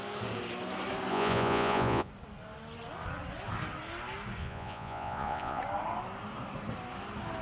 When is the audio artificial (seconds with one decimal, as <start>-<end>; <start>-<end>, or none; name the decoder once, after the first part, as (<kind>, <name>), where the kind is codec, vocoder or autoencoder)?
1.1-2.1 (vocoder, Vocos); 4.4-5.6